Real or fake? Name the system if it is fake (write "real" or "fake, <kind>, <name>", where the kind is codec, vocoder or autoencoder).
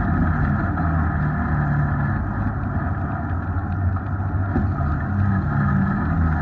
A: real